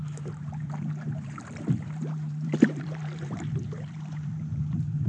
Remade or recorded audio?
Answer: remade